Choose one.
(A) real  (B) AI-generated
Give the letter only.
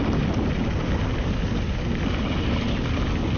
A